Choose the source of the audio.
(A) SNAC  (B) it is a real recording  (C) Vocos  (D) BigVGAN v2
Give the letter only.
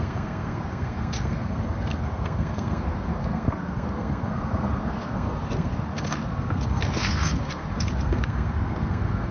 A